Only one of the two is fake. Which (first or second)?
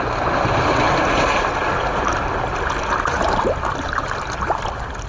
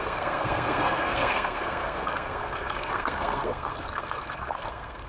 second